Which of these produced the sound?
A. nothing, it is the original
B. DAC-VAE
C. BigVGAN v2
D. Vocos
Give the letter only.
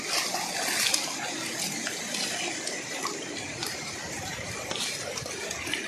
A